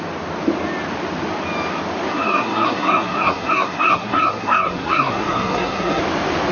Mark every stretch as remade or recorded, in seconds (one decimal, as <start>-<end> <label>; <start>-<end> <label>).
0.0-2.1 recorded; 2.1-6.0 remade; 6.0-6.5 recorded